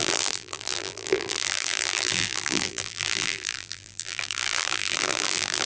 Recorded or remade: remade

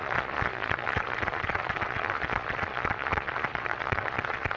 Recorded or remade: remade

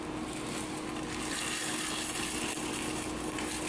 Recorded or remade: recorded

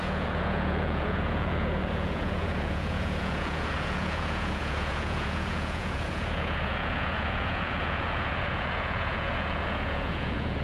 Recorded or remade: remade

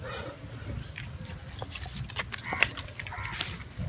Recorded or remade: recorded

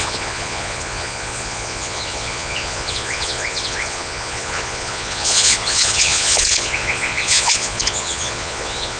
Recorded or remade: remade